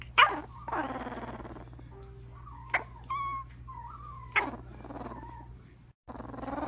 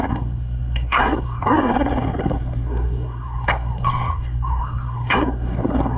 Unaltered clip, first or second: first